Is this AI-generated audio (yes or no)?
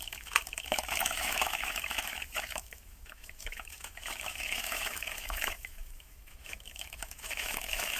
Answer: yes